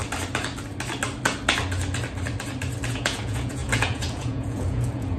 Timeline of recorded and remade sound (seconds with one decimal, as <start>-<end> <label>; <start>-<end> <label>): 0.0-2.9 recorded; 2.9-5.2 remade